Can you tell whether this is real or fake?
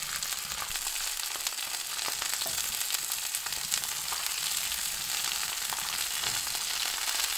real